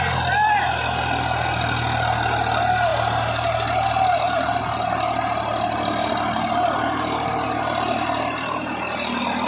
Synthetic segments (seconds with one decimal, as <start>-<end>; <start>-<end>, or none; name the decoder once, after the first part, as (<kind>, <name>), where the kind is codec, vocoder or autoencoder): none